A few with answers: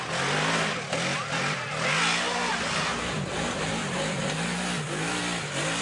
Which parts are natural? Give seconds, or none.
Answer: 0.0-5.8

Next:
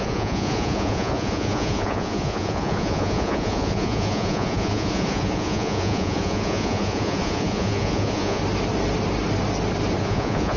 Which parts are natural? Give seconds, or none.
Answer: 8.4-10.0

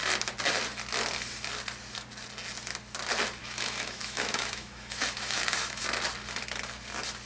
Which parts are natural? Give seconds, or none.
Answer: 0.0-3.4; 5.8-7.3

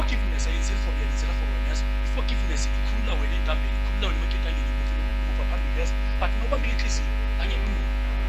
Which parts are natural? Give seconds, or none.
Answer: 0.0-8.3

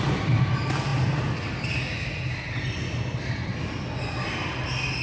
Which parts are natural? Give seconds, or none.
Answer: 0.0-5.0

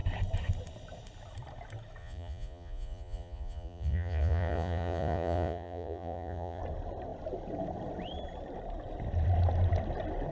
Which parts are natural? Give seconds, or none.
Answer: 0.0-2.0; 6.6-10.3

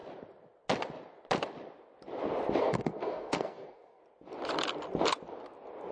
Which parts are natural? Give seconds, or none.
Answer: 0.0-2.6; 4.0-5.9

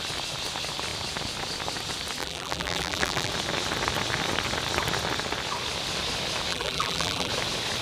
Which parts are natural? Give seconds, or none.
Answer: 0.0-2.2; 3.3-6.5; 7.3-7.8